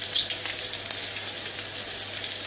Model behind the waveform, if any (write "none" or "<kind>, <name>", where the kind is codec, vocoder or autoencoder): none